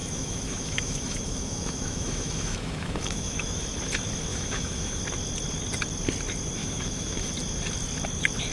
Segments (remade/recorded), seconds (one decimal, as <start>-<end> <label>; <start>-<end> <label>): 0.0-3.6 remade; 3.6-4.3 recorded; 4.3-5.0 remade; 5.0-6.6 recorded; 6.6-7.3 remade; 7.3-8.5 recorded